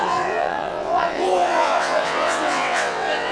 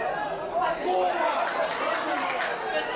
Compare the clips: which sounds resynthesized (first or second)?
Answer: first